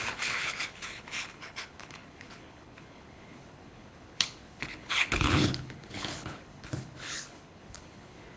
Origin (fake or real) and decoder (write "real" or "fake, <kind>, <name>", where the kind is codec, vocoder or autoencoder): fake, codec, HILCodec